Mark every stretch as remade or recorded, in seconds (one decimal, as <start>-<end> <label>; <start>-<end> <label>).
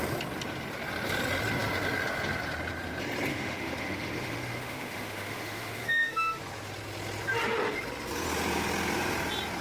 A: 0.0-3.3 recorded; 3.3-6.4 remade; 6.4-9.6 recorded